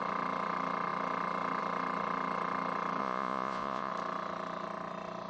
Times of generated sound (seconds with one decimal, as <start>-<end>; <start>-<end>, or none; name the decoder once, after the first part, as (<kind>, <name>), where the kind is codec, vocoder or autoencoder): 3.0-3.9 (vocoder, Vocos)